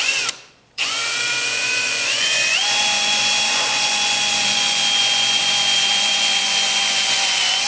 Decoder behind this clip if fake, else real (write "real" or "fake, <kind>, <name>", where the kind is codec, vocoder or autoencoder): fake, vocoder, Vocos